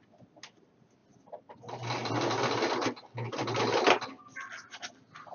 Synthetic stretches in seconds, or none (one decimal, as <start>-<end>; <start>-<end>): none